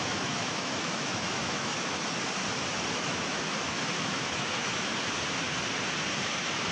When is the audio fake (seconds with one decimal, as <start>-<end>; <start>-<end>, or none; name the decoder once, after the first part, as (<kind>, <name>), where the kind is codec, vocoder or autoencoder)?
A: 0.0-1.7 (autoencoder, DAC-VAE); 2.9-4.9; 6.2-6.7